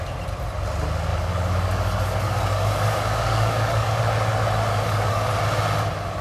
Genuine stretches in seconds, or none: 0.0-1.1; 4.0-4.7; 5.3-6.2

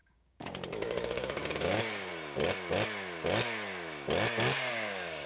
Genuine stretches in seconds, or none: 2.1-4.7

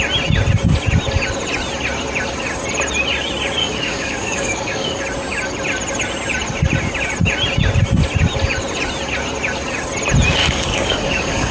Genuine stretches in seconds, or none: 0.0-3.6; 5.0-10.4